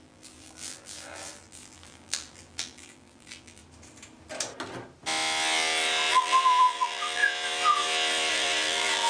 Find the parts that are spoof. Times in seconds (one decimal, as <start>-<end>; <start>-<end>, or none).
0.0-3.6; 6.1-7.2; 8.3-9.1